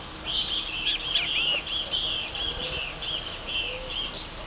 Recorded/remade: recorded